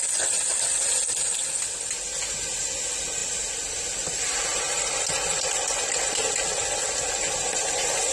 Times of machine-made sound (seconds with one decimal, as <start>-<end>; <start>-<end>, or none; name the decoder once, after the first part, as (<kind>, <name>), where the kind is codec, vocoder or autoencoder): none